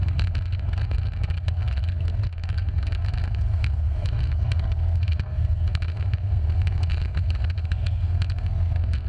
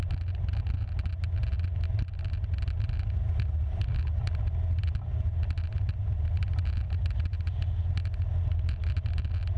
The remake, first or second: first